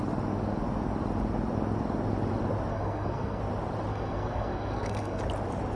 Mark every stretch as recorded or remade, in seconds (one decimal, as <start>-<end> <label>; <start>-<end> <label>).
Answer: 0.0-2.7 recorded; 2.7-3.4 remade; 3.4-3.9 recorded; 3.9-5.2 remade; 5.2-5.8 recorded